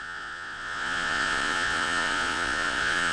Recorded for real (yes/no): no